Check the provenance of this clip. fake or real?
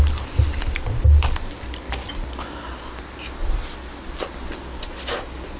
real